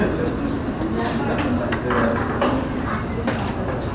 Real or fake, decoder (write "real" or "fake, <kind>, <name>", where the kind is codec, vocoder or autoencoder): real